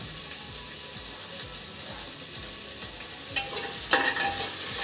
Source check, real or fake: real